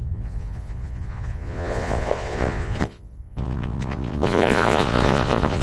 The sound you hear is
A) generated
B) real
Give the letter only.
A